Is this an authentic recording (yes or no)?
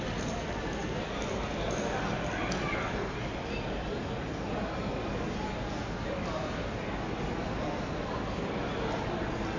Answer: yes